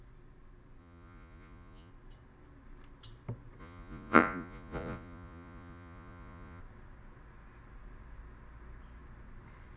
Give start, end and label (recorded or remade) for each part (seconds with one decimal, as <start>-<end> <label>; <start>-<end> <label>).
0.0-0.8 recorded; 0.8-1.9 remade; 1.9-3.6 recorded; 3.6-6.6 remade; 6.6-9.8 recorded